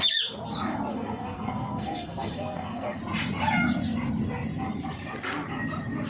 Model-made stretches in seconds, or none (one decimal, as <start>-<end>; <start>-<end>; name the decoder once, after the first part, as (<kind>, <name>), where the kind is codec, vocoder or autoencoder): 0.9-3.0 (codec, SNAC)